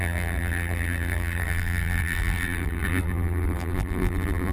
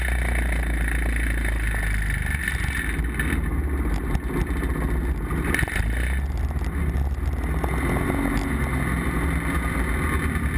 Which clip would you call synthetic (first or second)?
first